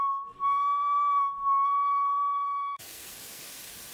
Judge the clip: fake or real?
fake